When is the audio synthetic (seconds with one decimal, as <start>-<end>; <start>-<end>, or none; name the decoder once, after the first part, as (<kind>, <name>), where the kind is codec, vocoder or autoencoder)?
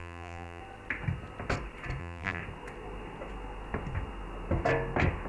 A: 0.0-0.6 (vocoder, BigVGAN v2); 2.0-2.4